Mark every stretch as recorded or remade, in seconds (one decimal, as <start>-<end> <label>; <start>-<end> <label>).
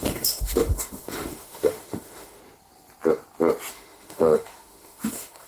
0.0-2.4 remade; 2.4-3.7 recorded; 3.7-5.5 remade